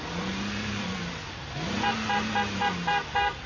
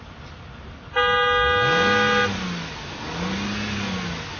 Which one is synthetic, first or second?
first